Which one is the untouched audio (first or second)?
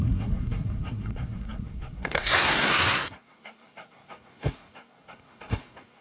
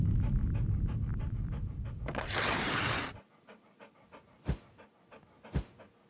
second